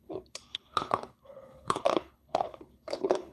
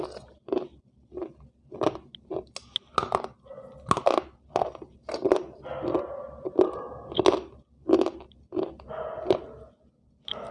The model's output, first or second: first